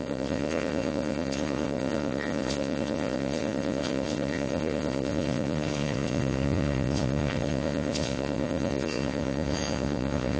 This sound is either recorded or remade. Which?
remade